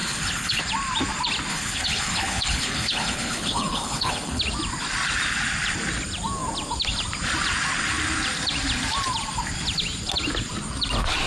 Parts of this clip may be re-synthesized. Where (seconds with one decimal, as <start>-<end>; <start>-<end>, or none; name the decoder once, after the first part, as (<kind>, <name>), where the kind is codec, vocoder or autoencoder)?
0.0-0.6 (codec, HILCodec); 1.5-4.4